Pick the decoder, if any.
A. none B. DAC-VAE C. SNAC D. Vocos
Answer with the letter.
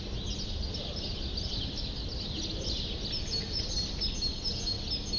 A